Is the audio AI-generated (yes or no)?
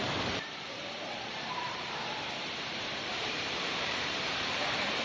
yes